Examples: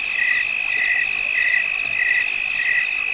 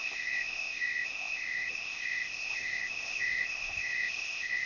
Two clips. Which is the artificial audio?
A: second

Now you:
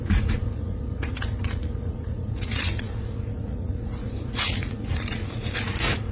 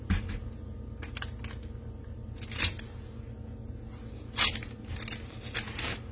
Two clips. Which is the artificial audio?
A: first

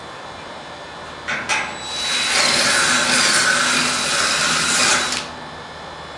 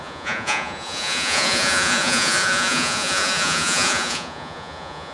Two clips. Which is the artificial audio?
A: second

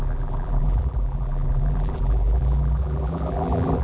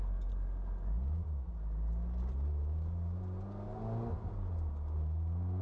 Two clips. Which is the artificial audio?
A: first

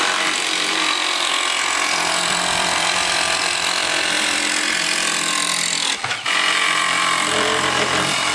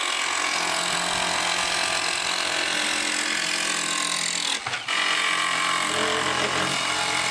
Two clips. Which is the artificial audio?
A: first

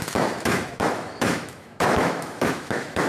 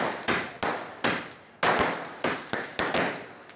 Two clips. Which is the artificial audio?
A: first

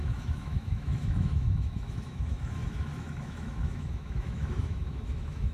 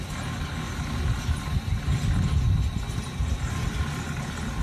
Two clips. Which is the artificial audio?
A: first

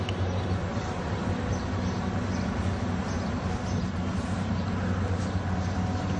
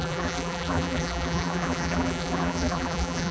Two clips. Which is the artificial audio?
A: second